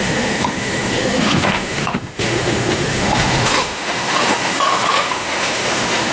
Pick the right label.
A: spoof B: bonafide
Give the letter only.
A